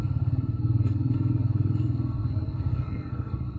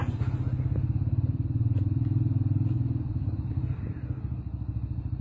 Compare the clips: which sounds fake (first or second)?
first